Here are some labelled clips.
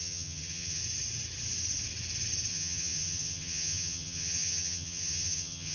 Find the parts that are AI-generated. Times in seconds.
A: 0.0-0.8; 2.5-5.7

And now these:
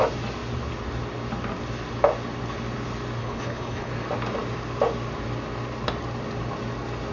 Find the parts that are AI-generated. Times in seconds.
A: 3.2-3.9